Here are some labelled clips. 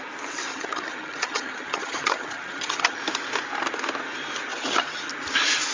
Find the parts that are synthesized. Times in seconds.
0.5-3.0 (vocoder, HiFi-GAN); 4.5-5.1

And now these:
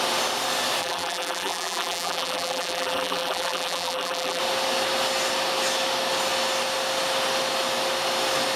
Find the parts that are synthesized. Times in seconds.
0.8-4.4 (vocoder, BigVGAN v2)

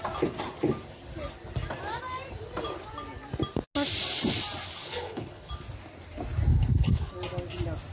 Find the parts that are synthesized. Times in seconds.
4.8-5.5 (codec, HILCodec); 6.5-7.1

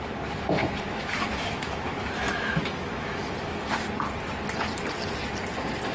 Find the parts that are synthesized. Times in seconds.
0.6-3.7 (autoencoder, DAC-VAE)

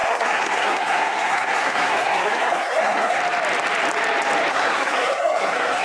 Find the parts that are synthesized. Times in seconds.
0.0-3.2 (codec, SNAC); 4.5-5.8